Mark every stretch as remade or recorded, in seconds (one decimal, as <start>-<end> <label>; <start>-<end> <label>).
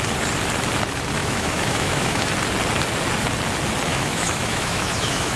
0.0-1.2 recorded; 1.2-2.3 remade; 2.3-3.9 recorded; 3.9-5.4 remade